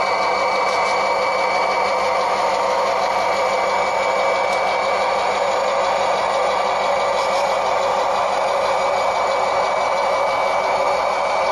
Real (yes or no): yes